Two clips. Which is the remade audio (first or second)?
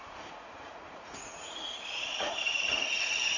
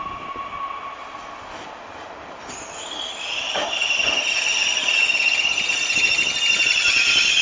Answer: first